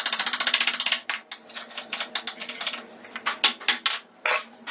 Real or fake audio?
real